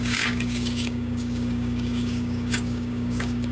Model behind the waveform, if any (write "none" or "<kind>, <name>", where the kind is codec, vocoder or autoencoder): codec, DAC